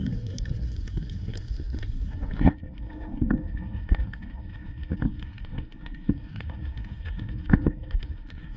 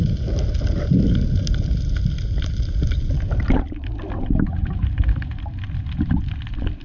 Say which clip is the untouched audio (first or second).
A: second